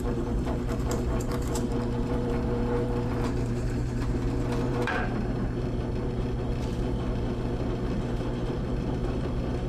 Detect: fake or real fake